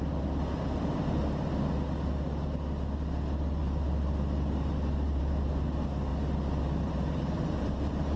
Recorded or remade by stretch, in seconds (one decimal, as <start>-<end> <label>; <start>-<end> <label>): 0.0-3.6 recorded; 3.6-5.2 remade; 5.2-6.1 recorded; 6.1-8.2 remade